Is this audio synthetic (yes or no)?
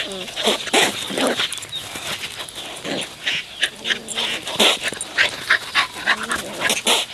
no